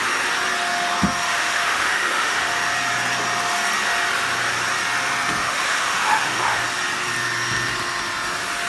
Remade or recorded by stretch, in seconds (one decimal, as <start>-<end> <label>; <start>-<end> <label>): 0.0-1.2 recorded; 1.2-2.5 remade; 2.5-5.4 recorded; 5.4-6.6 remade; 6.6-8.7 recorded